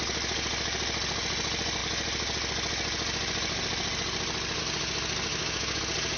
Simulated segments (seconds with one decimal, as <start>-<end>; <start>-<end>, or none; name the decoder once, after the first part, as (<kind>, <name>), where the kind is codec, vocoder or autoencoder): 5.3-5.8 (autoencoder, DAC-VAE)